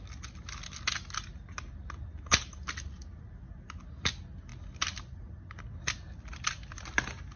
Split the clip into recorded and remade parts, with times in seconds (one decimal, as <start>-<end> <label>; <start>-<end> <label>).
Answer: 0.0-7.4 recorded